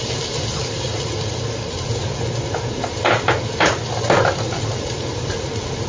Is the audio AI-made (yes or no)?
no